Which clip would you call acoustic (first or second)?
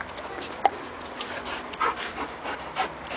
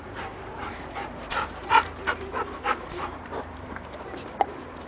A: first